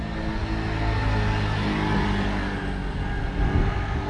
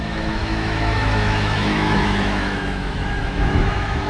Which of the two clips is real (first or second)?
first